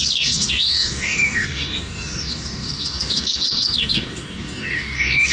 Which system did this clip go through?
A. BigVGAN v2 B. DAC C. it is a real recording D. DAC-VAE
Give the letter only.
B